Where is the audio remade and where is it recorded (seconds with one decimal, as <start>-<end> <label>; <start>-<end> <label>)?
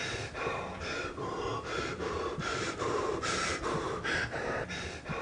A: 0.0-0.8 remade; 0.8-1.5 recorded; 1.5-4.4 remade; 4.4-5.2 recorded